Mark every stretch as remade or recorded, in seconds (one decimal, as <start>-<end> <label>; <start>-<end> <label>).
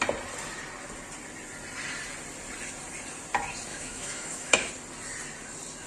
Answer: 0.0-3.7 recorded; 3.7-4.7 remade; 4.7-5.9 recorded